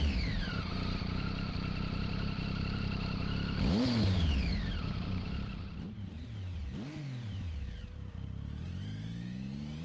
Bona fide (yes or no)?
no